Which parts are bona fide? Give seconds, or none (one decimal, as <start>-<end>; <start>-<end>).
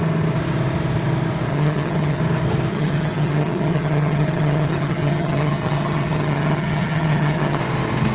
0.0-1.5; 2.2-2.7; 7.6-8.1